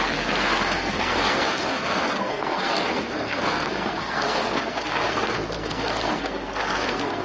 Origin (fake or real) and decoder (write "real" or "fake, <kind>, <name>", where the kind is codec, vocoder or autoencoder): fake, codec, SNAC